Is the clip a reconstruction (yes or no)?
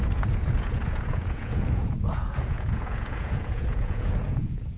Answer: yes